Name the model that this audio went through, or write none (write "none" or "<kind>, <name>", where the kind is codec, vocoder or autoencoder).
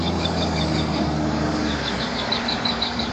codec, DAC